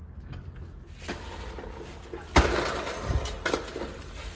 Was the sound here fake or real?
real